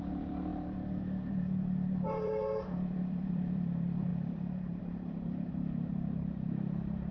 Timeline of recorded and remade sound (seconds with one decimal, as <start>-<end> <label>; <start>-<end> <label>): 0.0-7.1 remade